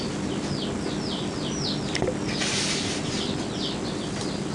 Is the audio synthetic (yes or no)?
no